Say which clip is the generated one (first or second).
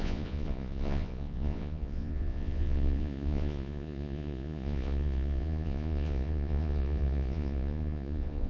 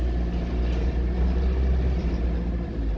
first